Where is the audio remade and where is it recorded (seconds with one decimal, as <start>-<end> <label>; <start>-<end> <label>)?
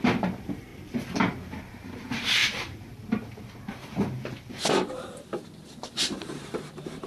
0.0-0.7 remade; 0.7-1.6 recorded; 1.6-7.1 remade